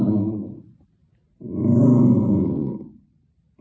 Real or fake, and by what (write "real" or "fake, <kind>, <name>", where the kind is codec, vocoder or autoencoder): fake, vocoder, BigVGAN v2